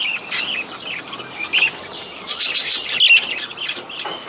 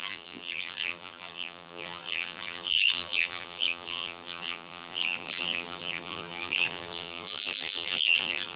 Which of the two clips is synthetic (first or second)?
second